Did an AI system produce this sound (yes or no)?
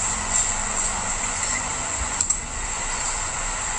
yes